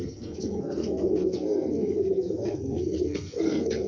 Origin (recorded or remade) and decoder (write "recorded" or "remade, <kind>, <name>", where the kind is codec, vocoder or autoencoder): remade, codec, SNAC